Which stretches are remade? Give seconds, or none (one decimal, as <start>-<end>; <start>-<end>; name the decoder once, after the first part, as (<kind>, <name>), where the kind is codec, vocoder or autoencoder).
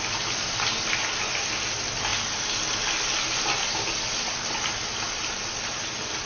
none